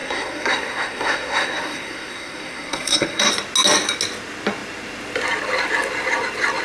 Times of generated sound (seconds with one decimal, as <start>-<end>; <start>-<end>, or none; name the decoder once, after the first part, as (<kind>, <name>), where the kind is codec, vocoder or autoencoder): 0.0-3.3 (codec, SNAC)